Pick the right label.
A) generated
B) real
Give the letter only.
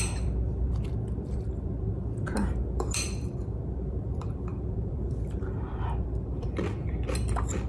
A